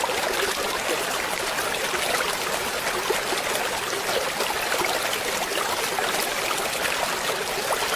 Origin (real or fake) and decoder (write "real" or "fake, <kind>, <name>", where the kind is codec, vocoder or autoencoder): real